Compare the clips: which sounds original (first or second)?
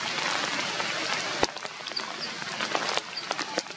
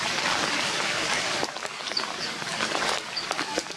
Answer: first